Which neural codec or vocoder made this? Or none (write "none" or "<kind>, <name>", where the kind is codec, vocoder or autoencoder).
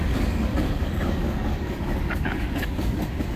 codec, DAC